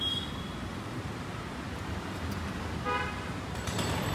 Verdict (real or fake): real